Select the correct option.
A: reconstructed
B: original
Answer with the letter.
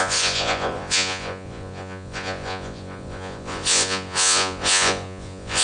A